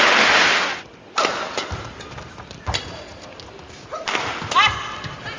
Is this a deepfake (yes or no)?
no